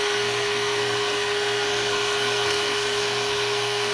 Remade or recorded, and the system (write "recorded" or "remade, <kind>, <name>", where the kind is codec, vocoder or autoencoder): remade, codec, SNAC